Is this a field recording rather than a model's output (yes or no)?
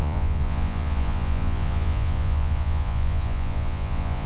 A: no